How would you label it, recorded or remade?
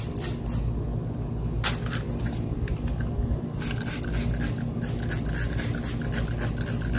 recorded